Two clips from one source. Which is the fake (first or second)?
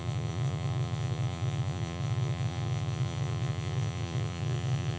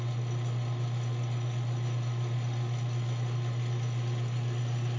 first